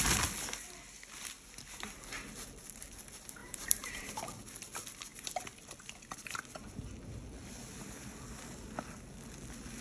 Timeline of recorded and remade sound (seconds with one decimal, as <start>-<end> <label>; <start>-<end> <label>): 0.0-3.4 recorded; 3.4-4.2 remade; 4.2-9.8 recorded